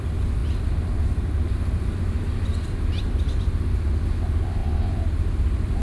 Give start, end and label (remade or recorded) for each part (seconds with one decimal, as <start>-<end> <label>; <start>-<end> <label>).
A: 0.0-5.8 recorded